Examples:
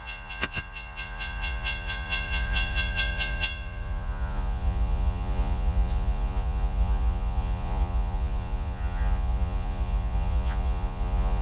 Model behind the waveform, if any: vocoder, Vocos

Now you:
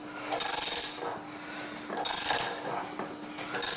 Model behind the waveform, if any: none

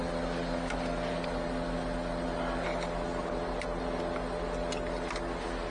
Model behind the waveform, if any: none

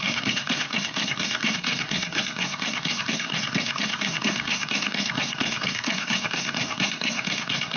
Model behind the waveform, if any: codec, SNAC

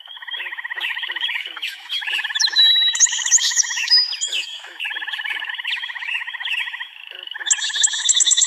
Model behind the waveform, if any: autoencoder, DAC-VAE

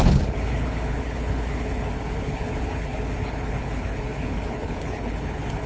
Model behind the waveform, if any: codec, HILCodec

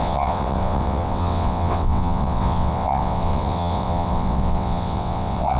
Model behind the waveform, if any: vocoder, WaveNeXt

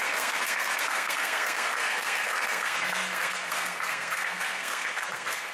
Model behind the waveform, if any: codec, SNAC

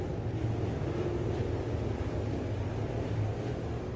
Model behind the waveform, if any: none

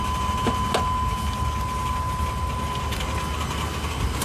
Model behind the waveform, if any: none